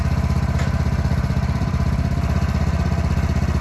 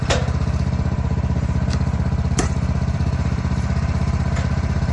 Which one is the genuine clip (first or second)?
first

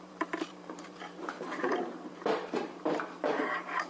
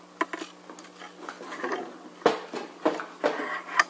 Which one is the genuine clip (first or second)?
second